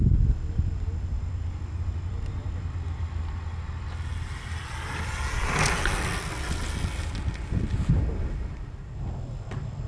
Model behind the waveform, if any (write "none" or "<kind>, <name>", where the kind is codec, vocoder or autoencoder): none